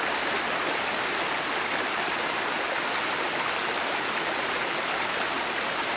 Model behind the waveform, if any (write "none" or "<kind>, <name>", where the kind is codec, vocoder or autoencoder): none